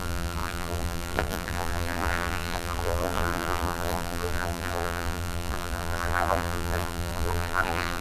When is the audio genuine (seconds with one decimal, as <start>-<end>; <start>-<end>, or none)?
none